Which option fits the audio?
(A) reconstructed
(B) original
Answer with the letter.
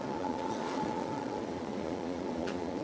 A